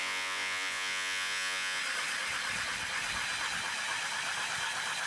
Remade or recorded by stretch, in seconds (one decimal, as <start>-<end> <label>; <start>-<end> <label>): 0.0-1.8 remade; 1.8-5.1 recorded